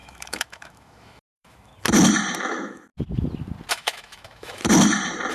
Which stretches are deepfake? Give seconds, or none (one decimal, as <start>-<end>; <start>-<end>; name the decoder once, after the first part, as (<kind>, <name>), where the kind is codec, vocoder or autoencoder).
0.0-1.7 (autoencoder, DAC-VAE); 2.4-2.9; 3.7-4.6